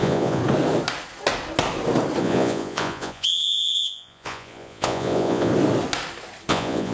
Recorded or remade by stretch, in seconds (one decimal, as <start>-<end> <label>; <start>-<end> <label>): 0.0-0.4 remade; 0.4-2.2 recorded; 2.2-5.5 remade; 5.5-6.5 recorded; 6.5-6.9 remade